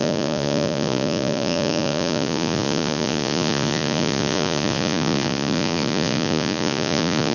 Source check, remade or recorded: remade